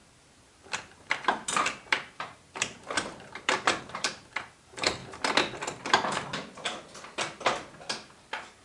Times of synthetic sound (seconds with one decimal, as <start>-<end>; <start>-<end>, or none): 0.0-5.0